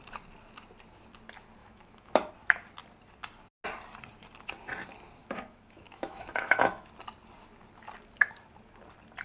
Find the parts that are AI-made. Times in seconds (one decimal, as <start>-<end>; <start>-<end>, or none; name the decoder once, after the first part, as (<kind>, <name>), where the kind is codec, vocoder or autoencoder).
1.6-2.3 (autoencoder, DAC-VAE); 5.2-6.9